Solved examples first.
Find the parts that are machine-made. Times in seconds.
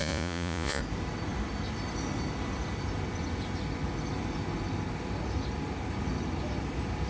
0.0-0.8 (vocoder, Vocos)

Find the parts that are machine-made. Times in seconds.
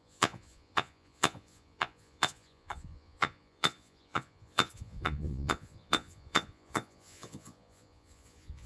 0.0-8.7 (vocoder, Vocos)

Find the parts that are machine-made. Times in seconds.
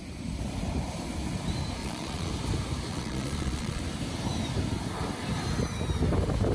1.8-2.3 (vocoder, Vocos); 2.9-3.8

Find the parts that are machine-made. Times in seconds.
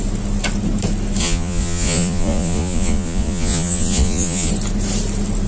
1.2-4.5 (vocoder, Vocos)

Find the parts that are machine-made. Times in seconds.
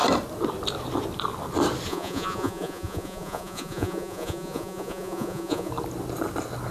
1.9-5.7 (vocoder, Vocos)